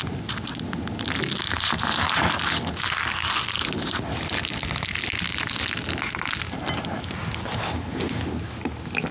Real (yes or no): yes